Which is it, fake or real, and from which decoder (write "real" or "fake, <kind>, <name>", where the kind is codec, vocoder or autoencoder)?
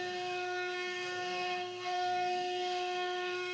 fake, codec, SNAC